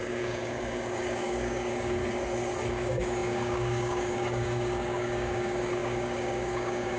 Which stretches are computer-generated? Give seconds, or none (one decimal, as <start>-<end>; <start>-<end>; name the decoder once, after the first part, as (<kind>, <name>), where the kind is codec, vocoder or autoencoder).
0.0-2.0 (codec, DAC); 2.7-7.0